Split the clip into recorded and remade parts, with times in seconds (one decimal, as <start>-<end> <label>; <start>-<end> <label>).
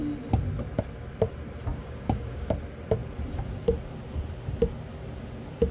0.0-1.7 recorded; 1.7-2.5 remade; 2.5-5.7 recorded